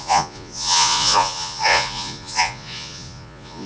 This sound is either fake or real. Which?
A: fake